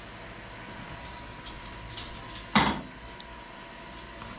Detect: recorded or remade recorded